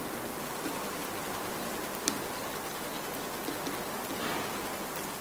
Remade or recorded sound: recorded